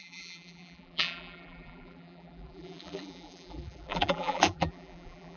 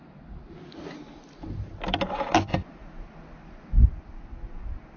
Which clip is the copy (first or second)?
first